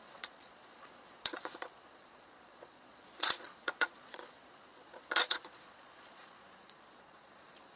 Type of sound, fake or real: fake